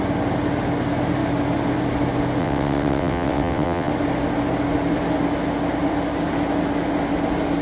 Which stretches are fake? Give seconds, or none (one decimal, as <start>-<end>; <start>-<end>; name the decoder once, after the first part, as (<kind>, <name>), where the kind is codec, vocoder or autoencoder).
2.4-3.9 (vocoder, WaveNeXt)